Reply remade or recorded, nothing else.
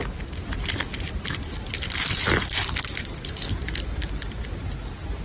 recorded